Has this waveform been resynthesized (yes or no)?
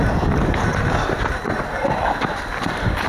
yes